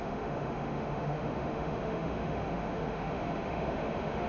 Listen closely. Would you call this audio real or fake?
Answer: fake